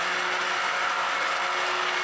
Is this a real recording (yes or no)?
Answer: yes